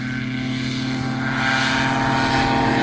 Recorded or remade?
recorded